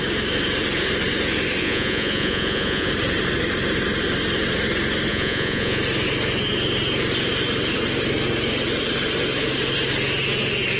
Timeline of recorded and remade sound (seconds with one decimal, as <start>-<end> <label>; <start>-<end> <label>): 0.0-1.6 recorded; 1.6-2.9 remade; 2.9-5.1 recorded; 5.1-5.8 remade; 5.8-10.8 recorded